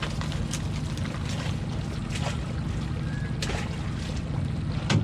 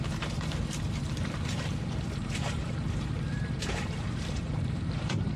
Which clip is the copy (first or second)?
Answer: second